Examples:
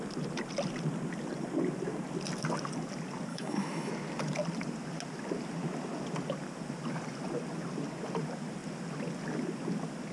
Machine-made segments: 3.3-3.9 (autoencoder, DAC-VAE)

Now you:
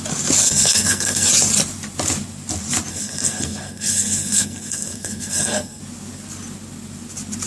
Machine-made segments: 0.4-1.3 (codec, SNAC); 2.9-5.8

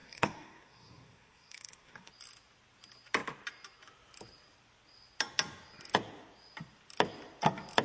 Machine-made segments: 0.0-2.1 (codec, SNAC)

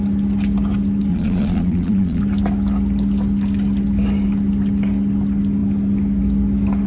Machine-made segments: 1.1-2.2 (vocoder, Vocos)

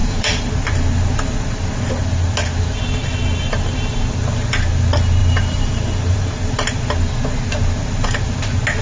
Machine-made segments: 0.0-0.5 (vocoder, BigVGAN v2); 5.2-6.8

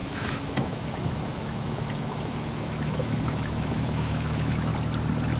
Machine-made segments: 0.0-4.7 (autoencoder, DAC-VAE)